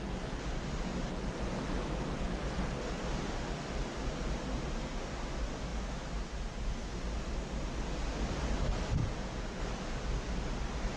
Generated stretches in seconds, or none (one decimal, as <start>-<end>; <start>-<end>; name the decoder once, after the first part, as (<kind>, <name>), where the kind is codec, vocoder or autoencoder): 9.0-9.6 (vocoder, Vocos)